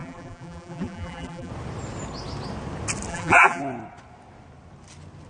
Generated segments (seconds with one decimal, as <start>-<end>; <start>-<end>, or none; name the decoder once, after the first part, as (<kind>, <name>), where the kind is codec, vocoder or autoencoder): 0.0-1.5 (vocoder, BigVGAN v2); 3.1-3.6